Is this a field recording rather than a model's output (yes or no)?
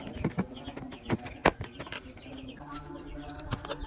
yes